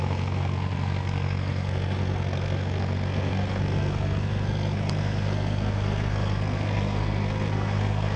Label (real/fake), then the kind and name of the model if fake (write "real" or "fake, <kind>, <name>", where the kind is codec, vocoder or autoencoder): fake, codec, SNAC